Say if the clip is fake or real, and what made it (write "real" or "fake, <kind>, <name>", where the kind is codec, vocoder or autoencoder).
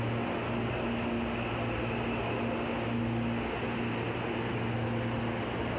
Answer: real